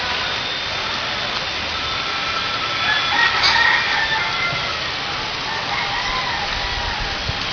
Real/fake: real